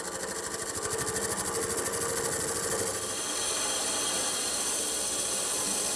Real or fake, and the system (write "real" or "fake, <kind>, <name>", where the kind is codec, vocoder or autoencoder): real